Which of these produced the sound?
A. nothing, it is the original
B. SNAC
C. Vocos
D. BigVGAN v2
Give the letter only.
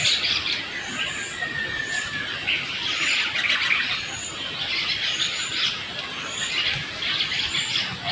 A